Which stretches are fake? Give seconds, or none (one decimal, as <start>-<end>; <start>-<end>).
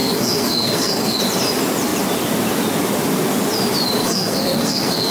0.0-1.2; 4.0-5.1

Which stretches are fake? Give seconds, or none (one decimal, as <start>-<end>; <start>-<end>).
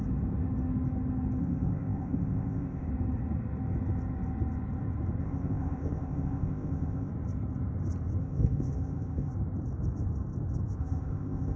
1.4-2.9; 5.2-7.1; 8.2-9.3; 10.8-11.6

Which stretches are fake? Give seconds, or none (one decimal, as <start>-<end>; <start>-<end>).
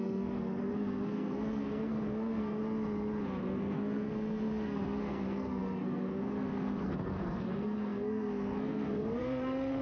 0.0-2.6; 3.4-9.8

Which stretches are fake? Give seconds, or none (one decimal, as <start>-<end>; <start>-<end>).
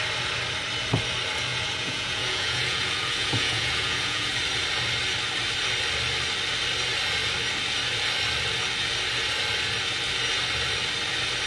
1.5-4.3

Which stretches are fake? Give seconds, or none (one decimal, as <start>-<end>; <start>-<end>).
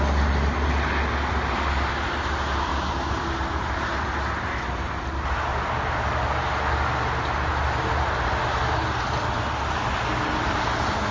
2.7-4.1; 5.5-6.2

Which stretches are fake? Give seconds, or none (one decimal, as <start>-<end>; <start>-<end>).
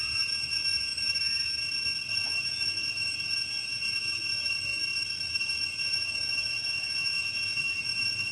0.0-0.9; 2.1-4.7; 5.3-8.3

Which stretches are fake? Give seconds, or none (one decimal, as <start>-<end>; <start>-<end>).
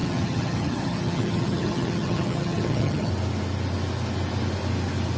0.0-3.1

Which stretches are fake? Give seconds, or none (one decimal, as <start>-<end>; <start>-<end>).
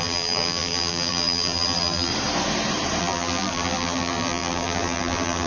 0.0-2.1; 3.0-5.5